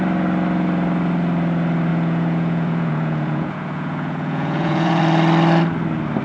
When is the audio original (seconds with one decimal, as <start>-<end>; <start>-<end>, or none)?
0.0-1.9; 5.0-6.2